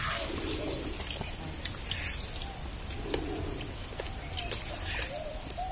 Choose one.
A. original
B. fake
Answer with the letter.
A